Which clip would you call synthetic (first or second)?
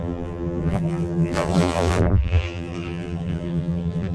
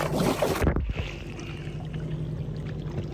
first